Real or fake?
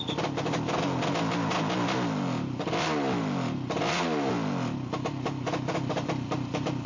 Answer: real